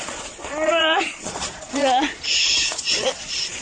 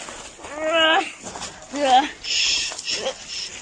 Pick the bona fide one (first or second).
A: second